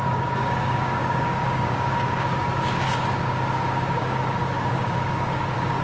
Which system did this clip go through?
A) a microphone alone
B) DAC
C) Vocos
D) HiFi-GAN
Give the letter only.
B